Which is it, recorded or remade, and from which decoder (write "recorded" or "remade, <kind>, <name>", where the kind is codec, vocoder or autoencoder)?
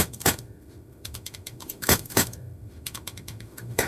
remade, autoencoder, DAC-VAE